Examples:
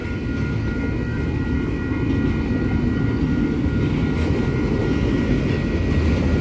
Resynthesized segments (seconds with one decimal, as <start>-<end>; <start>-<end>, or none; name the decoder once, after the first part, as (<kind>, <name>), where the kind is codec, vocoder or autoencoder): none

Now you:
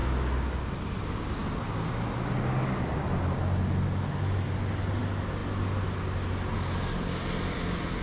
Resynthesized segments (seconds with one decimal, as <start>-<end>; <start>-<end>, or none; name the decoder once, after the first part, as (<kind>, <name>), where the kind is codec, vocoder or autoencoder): none

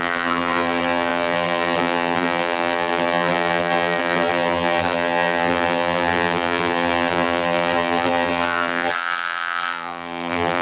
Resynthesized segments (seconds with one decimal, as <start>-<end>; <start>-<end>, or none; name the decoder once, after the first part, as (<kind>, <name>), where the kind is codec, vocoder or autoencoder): 0.0-10.6 (vocoder, BigVGAN v2)